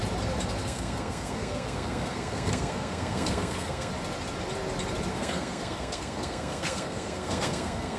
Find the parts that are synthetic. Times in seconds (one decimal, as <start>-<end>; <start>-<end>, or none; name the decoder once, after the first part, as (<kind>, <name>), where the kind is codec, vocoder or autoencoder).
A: 0.6-3.9 (codec, SNAC); 5.1-8.0